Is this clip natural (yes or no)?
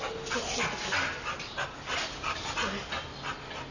yes